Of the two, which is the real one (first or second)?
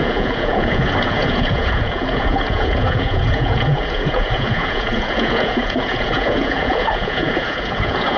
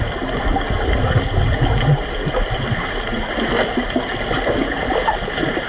second